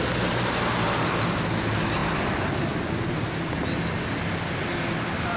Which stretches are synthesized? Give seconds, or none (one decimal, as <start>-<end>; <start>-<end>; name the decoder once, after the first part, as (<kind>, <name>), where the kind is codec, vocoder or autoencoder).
none